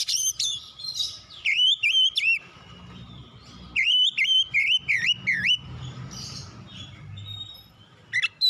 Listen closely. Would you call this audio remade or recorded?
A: remade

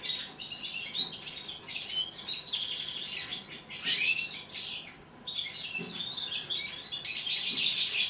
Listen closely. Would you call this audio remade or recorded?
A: recorded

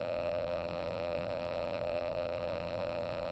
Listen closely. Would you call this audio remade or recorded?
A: remade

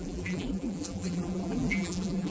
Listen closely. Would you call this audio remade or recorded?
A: remade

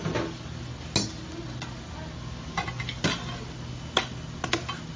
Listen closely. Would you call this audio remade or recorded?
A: recorded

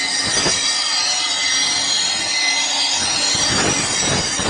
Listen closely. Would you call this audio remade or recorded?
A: recorded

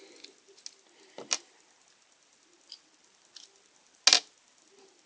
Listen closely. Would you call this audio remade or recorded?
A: recorded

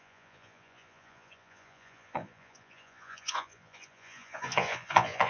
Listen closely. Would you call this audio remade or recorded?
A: remade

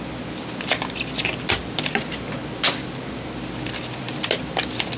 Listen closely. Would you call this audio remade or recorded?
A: recorded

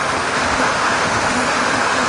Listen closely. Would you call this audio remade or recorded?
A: remade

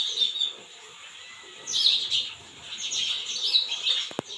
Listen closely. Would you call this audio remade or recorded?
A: recorded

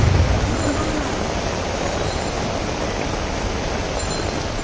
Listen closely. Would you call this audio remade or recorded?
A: recorded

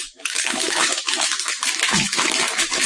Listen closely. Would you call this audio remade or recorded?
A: remade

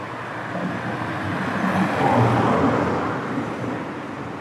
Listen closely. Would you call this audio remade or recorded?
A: recorded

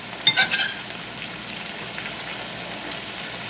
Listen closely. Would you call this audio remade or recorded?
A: recorded